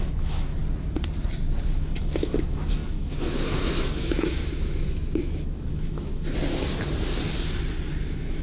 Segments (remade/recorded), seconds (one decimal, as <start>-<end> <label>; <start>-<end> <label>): 0.0-0.6 remade; 0.6-1.7 recorded; 1.7-6.1 remade; 6.1-8.0 recorded; 8.0-8.4 remade

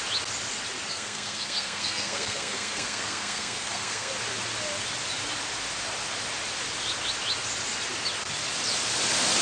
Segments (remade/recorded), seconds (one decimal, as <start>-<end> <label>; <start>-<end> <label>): 0.0-0.9 recorded; 0.9-4.1 remade; 4.1-9.4 recorded

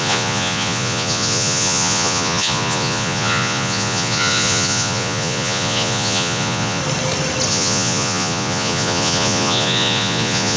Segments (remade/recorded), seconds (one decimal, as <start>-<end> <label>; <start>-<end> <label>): 0.0-6.8 remade; 6.8-7.5 recorded; 7.5-10.6 remade

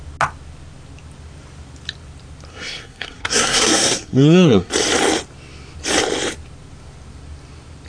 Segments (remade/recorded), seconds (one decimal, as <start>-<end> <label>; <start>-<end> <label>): 0.0-2.5 recorded; 2.5-4.7 remade; 4.7-7.9 recorded

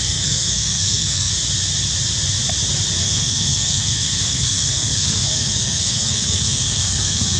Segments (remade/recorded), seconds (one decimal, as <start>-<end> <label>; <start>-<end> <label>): 0.0-1.3 remade; 1.3-3.0 recorded; 3.0-7.4 remade

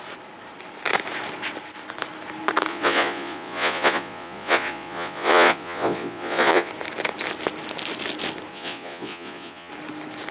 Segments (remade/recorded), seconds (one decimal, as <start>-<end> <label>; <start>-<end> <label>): 0.0-2.7 recorded; 2.7-6.7 remade; 6.7-8.5 recorded; 8.5-9.7 remade; 9.7-10.3 recorded